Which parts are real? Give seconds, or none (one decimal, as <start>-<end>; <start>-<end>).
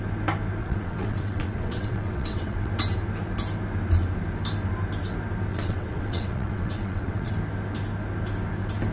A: 0.0-0.6; 2.7-5.5; 7.3-8.9